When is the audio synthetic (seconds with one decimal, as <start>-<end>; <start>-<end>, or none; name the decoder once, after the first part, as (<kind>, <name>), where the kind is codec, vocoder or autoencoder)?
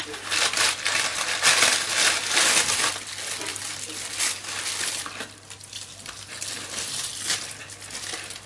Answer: none